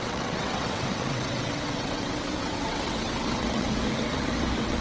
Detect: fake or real fake